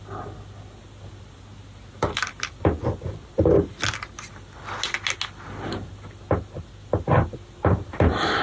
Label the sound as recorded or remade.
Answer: recorded